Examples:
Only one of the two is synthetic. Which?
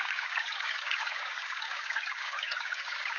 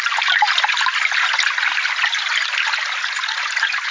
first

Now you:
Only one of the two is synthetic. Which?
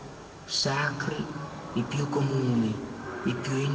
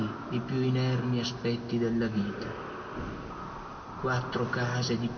first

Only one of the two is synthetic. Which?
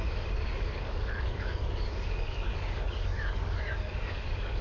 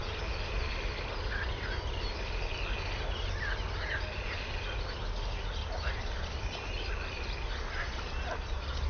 first